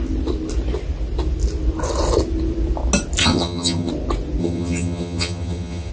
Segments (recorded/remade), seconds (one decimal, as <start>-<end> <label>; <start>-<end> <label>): 0.0-3.2 recorded; 3.2-3.9 remade; 3.9-4.4 recorded; 4.4-5.9 remade